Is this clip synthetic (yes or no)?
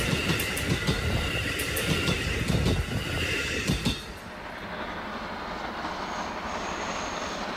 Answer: no